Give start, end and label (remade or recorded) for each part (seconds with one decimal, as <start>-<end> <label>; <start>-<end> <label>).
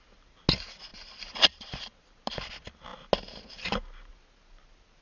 0.0-0.9 recorded; 0.9-1.8 remade; 1.8-5.0 recorded